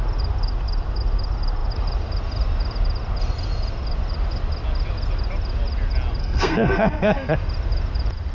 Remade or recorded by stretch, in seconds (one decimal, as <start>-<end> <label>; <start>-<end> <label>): 0.0-6.2 recorded; 6.2-7.3 remade; 7.3-8.3 recorded